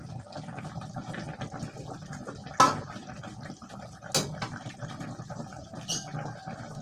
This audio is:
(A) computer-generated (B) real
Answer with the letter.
B